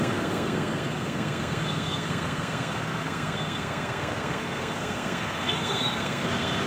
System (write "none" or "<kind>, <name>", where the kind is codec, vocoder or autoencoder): codec, SNAC